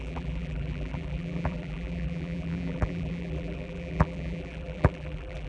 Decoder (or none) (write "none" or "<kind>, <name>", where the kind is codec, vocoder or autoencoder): vocoder, BigVGAN v2